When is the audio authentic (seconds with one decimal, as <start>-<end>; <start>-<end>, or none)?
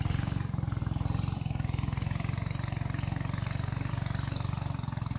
0.0-5.2